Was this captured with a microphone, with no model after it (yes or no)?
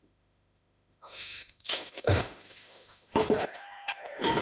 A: no